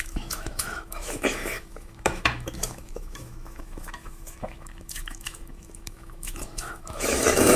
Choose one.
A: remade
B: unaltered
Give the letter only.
A